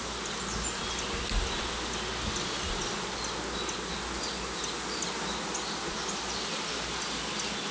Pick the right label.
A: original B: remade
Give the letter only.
A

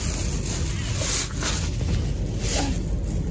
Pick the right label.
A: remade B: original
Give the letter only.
B